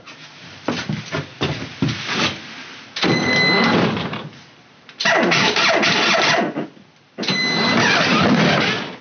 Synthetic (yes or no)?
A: no